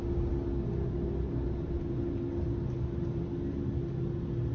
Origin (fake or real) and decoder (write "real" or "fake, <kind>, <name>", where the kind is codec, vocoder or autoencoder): real